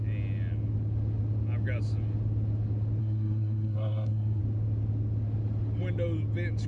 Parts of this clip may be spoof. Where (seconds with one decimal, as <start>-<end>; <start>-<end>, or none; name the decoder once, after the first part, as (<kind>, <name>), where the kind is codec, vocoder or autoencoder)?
3.0-4.4 (codec, SNAC)